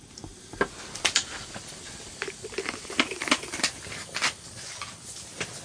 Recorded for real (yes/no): yes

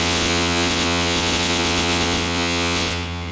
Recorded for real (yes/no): no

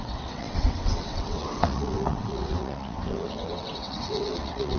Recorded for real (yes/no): no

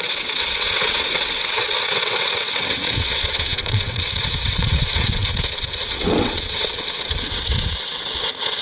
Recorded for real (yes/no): no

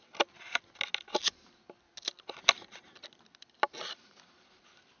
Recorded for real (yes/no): yes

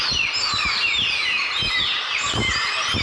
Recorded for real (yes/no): yes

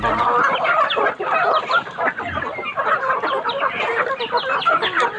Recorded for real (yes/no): yes